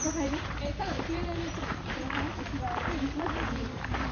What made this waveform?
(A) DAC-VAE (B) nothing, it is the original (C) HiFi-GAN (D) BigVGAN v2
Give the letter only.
D